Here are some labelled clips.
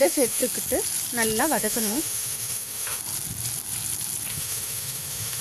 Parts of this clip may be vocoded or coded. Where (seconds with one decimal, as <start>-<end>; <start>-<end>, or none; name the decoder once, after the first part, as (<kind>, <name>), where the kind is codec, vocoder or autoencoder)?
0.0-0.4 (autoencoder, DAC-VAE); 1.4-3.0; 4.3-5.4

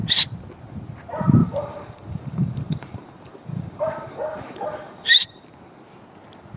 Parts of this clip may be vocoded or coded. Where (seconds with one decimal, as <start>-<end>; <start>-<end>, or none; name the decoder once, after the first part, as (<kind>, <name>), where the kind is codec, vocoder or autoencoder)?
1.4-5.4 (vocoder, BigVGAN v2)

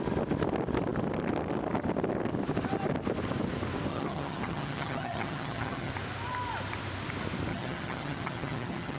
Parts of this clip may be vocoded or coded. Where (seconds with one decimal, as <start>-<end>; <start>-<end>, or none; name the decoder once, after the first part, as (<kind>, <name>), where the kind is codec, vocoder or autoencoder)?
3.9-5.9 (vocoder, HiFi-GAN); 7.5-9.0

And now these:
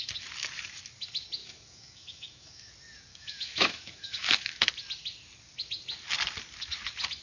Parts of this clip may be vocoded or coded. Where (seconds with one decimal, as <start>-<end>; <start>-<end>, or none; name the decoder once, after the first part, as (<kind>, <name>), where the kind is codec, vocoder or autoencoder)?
1.4-2.7 (autoencoder, DAC-VAE); 3.1-4.7